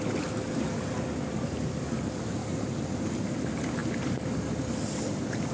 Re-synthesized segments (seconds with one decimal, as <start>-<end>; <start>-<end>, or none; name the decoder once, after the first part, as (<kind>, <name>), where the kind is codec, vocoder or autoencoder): 2.4-3.1 (vocoder, BigVGAN v2)